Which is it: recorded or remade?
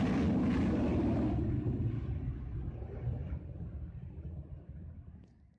recorded